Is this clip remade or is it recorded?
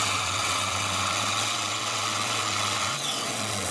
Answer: remade